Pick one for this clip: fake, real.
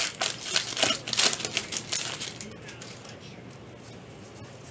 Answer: real